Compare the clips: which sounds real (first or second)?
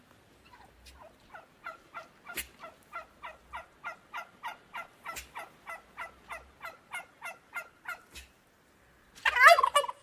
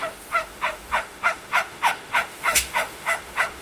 first